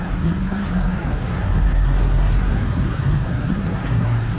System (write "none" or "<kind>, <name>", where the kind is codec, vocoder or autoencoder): codec, SNAC